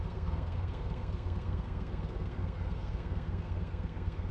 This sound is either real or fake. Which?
fake